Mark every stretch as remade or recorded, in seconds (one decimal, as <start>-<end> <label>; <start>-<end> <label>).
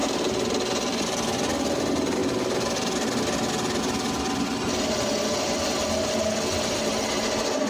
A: 0.0-7.7 recorded